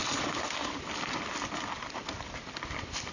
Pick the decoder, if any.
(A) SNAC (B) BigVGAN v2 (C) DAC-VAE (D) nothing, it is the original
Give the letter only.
B